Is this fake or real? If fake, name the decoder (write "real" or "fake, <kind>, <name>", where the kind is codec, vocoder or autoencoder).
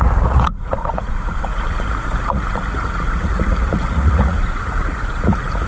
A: fake, vocoder, Vocos